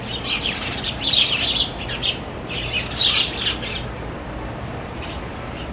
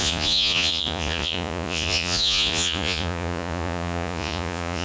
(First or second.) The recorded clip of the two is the first